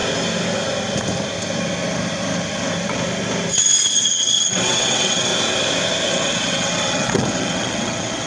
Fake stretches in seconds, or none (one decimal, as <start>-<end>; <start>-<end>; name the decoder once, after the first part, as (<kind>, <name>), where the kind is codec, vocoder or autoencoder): 4.0-5.3 (vocoder, WaveNeXt); 6.1-8.3